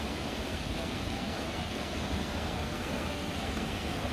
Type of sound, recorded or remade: remade